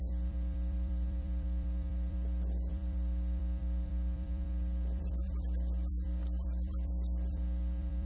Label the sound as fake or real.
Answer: fake